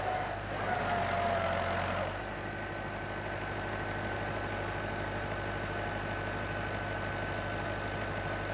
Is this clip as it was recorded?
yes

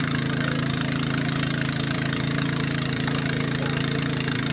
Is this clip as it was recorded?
no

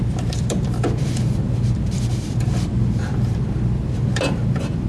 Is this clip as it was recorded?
no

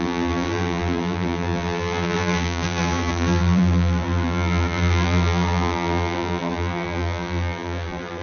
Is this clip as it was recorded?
no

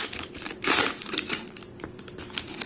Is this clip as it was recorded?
no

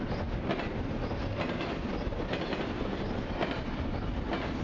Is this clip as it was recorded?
yes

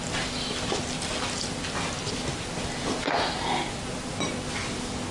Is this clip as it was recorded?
yes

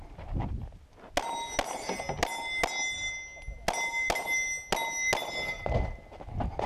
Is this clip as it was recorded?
yes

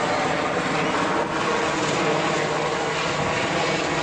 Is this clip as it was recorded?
yes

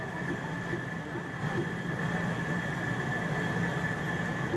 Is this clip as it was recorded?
yes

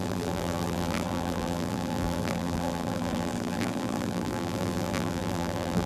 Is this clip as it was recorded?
no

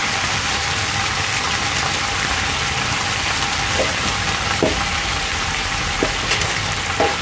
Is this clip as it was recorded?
no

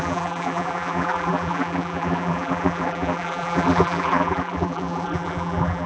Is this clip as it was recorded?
no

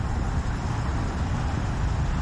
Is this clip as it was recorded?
yes